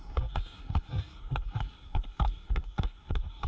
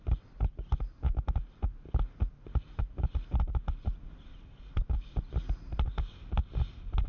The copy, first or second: first